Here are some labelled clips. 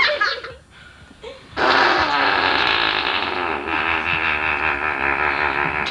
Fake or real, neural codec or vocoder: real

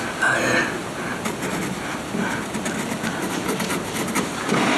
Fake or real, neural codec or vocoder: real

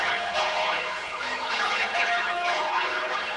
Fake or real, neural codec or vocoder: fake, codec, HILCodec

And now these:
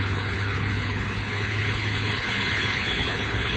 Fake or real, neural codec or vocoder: fake, codec, HILCodec